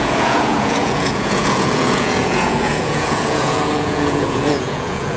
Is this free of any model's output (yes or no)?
no